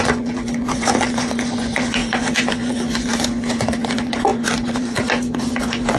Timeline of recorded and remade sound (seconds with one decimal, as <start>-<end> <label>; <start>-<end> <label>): 0.0-6.0 remade